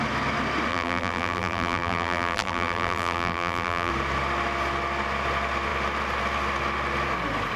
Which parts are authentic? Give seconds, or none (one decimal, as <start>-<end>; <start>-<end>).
0.0-0.7; 3.9-7.6